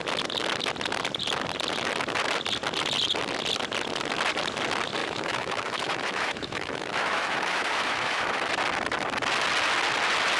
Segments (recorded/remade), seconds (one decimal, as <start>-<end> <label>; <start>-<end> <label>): 0.0-5.0 recorded; 5.0-8.5 remade; 8.5-10.4 recorded

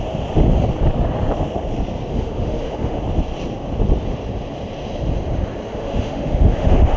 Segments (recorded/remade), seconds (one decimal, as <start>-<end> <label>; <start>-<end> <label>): 0.0-2.1 recorded; 2.1-3.0 remade; 3.0-5.7 recorded; 5.7-7.0 remade

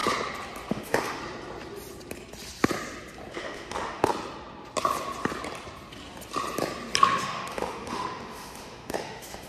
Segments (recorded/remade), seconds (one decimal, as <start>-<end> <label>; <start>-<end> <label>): 0.0-0.7 recorded; 0.7-1.2 remade; 1.2-3.3 recorded; 3.3-4.1 remade; 4.1-7.2 recorded; 7.2-9.5 remade

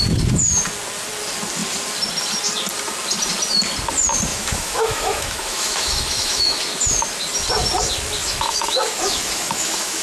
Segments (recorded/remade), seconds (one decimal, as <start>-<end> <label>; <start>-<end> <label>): 0.0-4.3 recorded; 4.3-6.6 remade; 6.6-8.2 recorded; 8.2-10.0 remade